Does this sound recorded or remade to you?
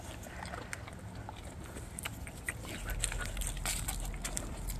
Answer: recorded